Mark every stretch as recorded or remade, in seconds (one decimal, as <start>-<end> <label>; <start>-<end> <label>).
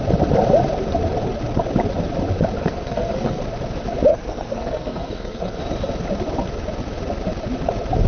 0.0-2.6 recorded; 2.6-3.4 remade; 3.4-4.1 recorded; 4.1-5.6 remade; 5.6-8.1 recorded